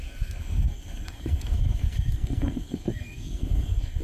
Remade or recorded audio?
remade